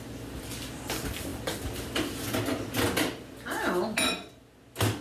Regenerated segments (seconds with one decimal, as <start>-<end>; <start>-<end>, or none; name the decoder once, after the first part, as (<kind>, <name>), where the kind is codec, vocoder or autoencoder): none